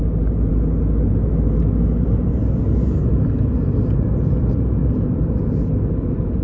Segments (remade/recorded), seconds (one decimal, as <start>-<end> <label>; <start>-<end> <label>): 0.0-6.4 recorded